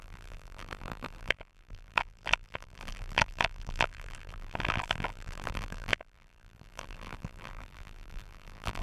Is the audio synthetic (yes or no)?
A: yes